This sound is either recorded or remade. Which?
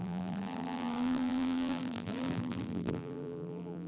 remade